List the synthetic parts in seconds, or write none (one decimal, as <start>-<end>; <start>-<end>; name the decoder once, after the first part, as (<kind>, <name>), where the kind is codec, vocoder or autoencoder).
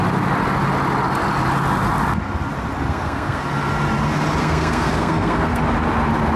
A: 2.9-3.4 (codec, SNAC); 4.4-5.6